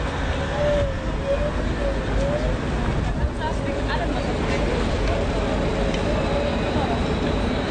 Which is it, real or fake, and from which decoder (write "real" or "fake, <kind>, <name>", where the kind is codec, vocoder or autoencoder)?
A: real